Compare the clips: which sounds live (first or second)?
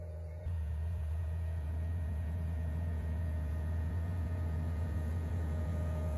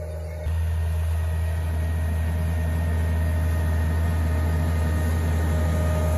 second